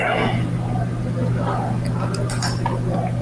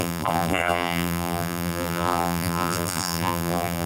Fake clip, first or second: second